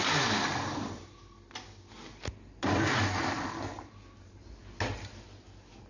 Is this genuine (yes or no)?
yes